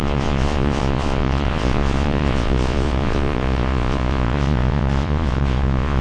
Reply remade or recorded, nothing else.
remade